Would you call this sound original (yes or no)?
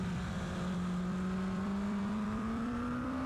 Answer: no